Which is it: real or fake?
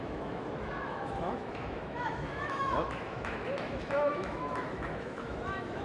fake